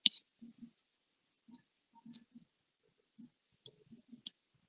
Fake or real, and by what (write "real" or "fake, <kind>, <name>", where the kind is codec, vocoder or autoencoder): real